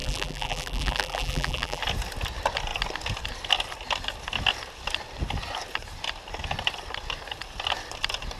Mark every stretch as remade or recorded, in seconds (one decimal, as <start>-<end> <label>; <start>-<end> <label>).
0.0-1.8 remade; 1.8-8.4 recorded